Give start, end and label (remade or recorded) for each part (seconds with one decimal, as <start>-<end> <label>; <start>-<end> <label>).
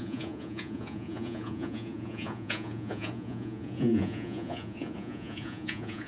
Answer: 0.0-6.1 remade